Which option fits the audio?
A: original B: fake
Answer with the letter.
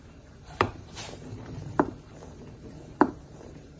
B